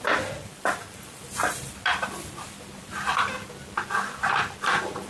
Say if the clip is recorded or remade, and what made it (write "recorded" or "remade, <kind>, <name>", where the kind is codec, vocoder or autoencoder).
recorded